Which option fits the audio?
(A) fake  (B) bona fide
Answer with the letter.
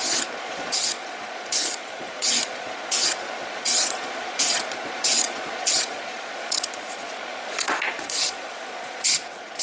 A